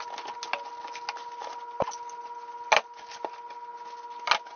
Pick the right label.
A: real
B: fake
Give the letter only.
A